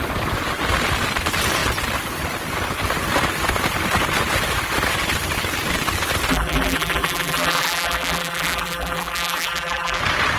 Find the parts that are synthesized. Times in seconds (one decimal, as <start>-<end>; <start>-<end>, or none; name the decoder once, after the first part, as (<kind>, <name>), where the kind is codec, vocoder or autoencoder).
6.3-10.0 (vocoder, BigVGAN v2)